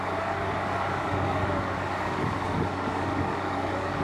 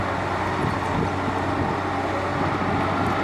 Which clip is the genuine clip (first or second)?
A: second